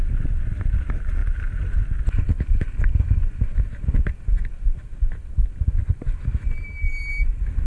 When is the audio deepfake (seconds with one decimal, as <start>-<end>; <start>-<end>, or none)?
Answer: 6.3-7.1